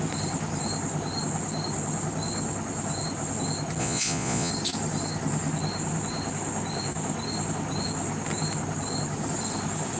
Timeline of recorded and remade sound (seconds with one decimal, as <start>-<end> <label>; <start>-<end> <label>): 0.0-3.8 recorded; 3.8-4.5 remade; 4.5-10.0 recorded